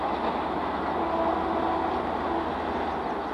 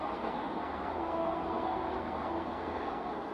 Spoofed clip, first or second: second